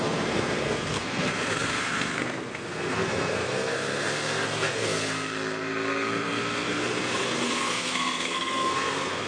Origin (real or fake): fake